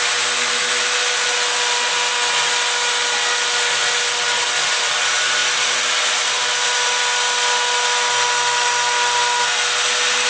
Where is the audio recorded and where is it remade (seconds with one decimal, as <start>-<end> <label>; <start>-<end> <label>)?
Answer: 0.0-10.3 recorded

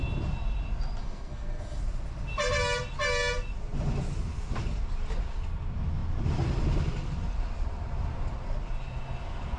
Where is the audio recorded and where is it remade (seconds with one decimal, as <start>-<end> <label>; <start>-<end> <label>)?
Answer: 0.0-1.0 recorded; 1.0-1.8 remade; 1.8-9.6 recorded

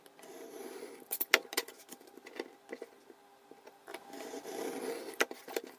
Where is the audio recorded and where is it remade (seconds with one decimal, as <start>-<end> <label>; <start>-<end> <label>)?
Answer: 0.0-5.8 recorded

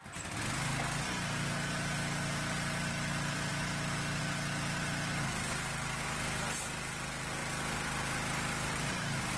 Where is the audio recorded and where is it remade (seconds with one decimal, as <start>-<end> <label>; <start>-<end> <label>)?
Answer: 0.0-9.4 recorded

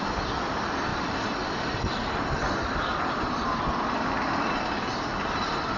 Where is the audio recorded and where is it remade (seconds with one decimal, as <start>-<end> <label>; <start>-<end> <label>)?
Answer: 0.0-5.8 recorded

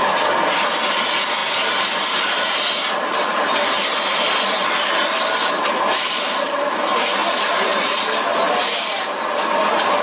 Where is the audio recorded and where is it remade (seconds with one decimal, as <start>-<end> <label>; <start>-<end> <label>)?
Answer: 0.0-10.0 recorded